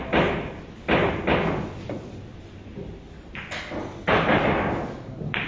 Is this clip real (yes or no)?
yes